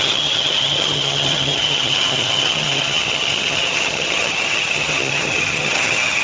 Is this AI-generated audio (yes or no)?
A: yes